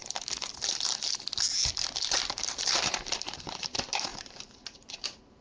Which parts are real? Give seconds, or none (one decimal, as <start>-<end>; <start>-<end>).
0.0-2.7